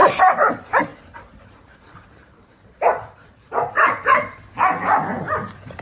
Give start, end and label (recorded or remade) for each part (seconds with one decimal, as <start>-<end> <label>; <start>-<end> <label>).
0.0-0.5 remade; 0.5-0.9 recorded; 0.9-4.4 remade; 4.4-5.8 recorded